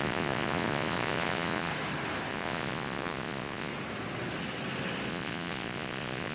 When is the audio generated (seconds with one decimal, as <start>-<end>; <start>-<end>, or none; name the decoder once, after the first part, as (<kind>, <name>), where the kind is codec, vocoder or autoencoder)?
0.0-1.7 (vocoder, Vocos); 2.3-3.7; 5.1-6.3